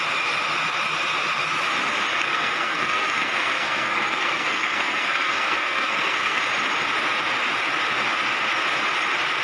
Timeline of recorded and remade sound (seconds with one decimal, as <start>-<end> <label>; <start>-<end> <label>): 0.0-2.1 recorded; 2.1-6.4 remade; 6.4-9.4 recorded